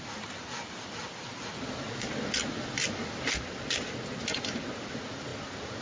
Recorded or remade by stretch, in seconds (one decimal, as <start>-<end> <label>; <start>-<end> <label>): 0.0-5.8 recorded